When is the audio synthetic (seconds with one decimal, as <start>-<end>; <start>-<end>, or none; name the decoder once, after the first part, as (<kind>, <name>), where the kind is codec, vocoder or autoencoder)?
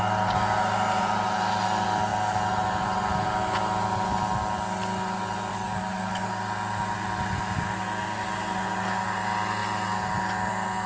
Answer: 5.5-6.3 (codec, DAC)